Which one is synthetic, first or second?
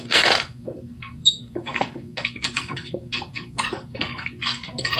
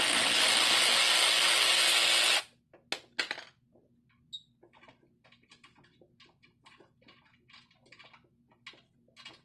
first